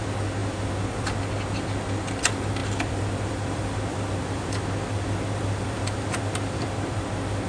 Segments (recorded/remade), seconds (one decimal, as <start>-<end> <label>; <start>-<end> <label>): 0.0-0.4 recorded; 0.4-1.2 remade; 1.2-2.6 recorded; 2.6-7.1 remade; 7.1-7.5 recorded